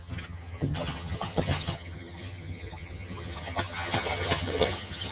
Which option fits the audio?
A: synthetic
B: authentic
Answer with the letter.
A